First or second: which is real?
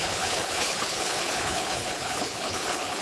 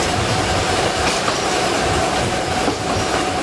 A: second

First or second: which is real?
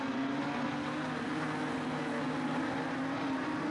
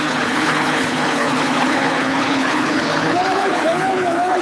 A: first